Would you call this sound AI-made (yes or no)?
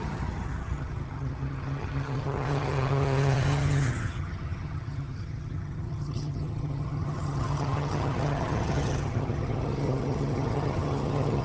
yes